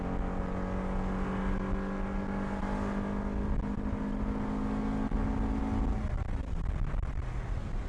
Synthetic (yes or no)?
no